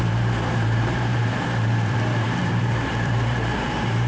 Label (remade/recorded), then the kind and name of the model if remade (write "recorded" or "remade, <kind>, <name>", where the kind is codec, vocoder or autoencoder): remade, vocoder, BigVGAN v2